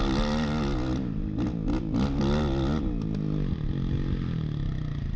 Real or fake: real